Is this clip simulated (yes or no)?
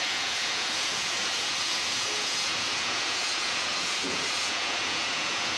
yes